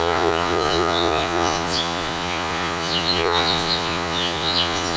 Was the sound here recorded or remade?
remade